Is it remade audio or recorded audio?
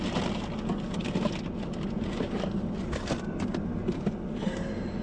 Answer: recorded